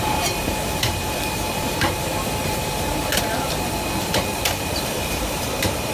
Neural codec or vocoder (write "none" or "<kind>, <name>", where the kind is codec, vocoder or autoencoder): vocoder, BigVGAN v2